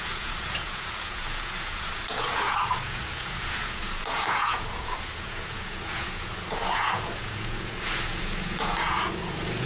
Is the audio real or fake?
fake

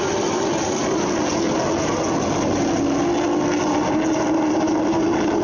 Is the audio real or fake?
real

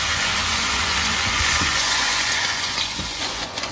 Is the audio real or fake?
fake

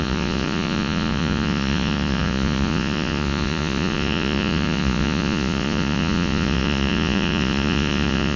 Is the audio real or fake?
fake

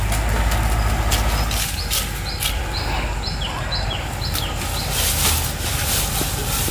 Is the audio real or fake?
real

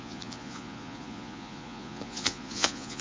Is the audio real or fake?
fake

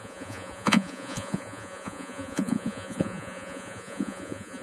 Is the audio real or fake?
fake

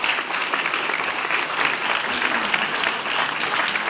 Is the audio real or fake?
real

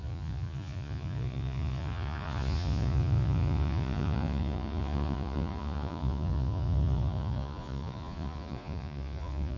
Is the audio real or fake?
fake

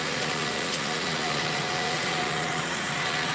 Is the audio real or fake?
fake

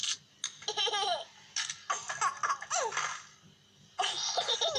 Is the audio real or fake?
real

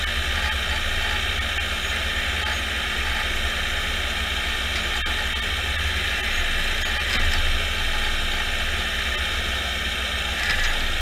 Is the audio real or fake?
real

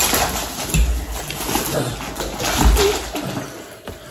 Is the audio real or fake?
real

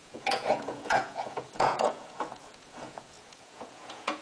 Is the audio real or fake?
fake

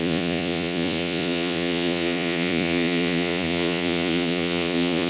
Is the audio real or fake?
fake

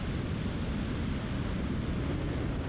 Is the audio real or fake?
real